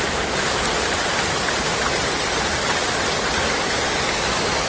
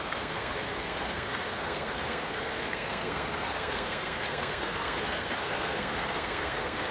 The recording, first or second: first